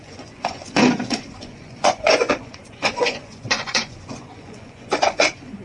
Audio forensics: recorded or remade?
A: remade